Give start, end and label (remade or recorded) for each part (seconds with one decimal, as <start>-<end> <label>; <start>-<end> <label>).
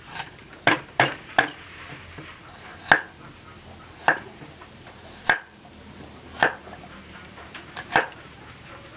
0.0-2.8 remade; 2.8-4.0 recorded; 4.0-9.0 remade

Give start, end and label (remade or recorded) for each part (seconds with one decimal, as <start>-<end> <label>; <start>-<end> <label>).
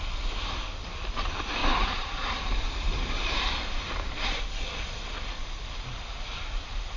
0.0-1.6 recorded; 1.6-4.5 remade; 4.5-7.0 recorded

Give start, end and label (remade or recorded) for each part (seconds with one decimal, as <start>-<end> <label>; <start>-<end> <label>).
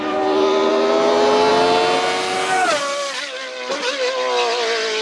0.0-5.0 recorded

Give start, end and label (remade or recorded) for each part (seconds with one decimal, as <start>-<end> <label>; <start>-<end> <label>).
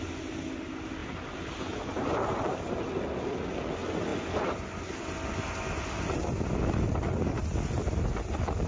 0.0-8.7 recorded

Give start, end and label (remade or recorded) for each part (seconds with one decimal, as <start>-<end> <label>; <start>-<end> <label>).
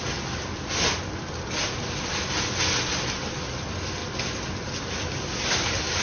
0.0-6.0 recorded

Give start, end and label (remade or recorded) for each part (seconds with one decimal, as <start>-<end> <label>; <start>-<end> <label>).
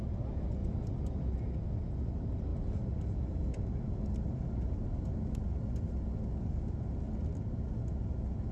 0.0-0.6 recorded; 0.6-1.2 remade; 1.2-2.5 recorded; 2.5-3.2 remade; 3.2-8.5 recorded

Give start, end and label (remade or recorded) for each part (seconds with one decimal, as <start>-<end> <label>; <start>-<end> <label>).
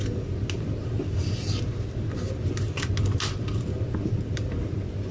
0.0-5.1 recorded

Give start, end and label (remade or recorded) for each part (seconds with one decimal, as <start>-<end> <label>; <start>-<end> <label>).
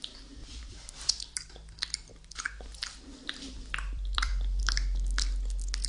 0.0-0.4 recorded; 0.4-1.2 remade; 1.2-2.1 recorded; 2.1-4.6 remade; 4.6-5.9 recorded